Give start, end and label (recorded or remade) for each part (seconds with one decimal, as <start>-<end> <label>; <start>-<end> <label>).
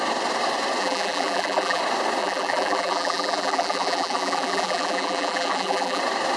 0.0-0.8 recorded; 0.8-1.8 remade; 1.8-2.2 recorded; 2.2-6.0 remade; 6.0-6.4 recorded